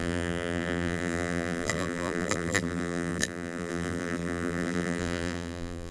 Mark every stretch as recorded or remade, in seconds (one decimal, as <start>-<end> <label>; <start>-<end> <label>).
0.0-5.9 remade